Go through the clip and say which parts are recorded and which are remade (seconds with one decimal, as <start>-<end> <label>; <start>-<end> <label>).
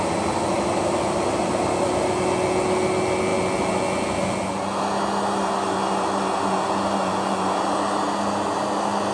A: 0.0-9.1 recorded